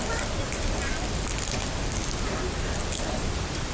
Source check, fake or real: real